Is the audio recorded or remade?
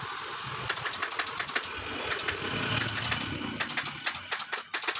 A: recorded